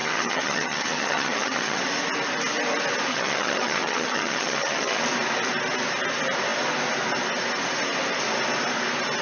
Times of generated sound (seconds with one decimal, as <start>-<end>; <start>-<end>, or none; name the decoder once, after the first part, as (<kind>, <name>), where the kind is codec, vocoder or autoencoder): 0.0-1.8 (vocoder, HiFi-GAN); 3.1-5.0